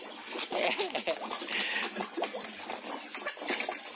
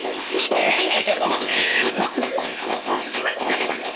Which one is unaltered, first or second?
first